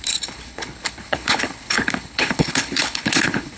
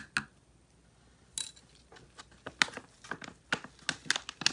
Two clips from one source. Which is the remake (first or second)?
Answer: first